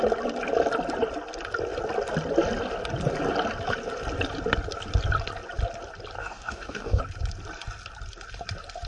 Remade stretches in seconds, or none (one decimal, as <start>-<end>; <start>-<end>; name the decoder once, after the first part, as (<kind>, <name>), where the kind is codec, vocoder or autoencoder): 6.2-7.0 (codec, DAC)